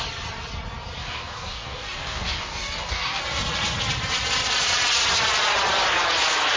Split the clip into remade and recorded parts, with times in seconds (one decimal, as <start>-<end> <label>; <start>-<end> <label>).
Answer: 0.0-1.0 recorded; 1.0-3.2 remade; 3.2-6.6 recorded